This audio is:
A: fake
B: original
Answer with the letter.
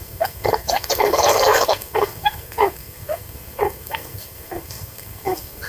A